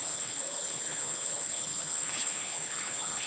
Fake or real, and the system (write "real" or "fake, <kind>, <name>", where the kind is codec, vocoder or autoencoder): fake, codec, HILCodec